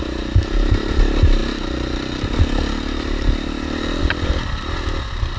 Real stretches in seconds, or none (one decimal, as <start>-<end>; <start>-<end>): 0.0-5.4

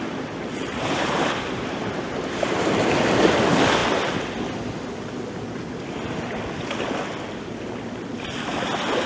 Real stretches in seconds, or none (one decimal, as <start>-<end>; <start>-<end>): 0.0-0.4; 2.8-9.1

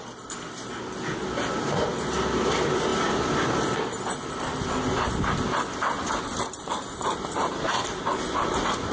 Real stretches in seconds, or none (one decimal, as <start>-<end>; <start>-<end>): 0.0-8.9